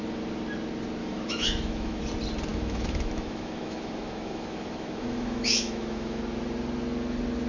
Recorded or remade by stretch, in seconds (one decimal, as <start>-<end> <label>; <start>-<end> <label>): 0.0-1.0 recorded; 1.0-2.0 remade; 2.0-2.5 recorded; 2.5-6.2 remade; 6.2-7.5 recorded